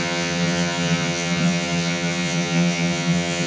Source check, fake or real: fake